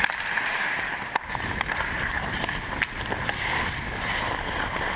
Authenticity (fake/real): real